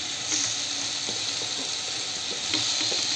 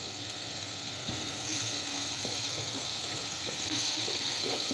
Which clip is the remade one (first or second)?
second